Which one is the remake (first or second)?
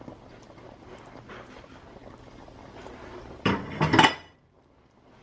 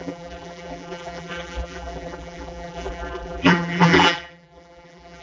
second